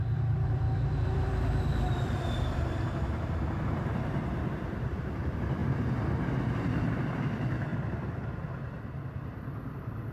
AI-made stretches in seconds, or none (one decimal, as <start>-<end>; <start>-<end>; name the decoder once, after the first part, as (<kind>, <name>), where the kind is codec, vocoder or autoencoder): 0.0-5.6 (vocoder, BigVGAN v2); 7.0-7.7; 9.3-10.1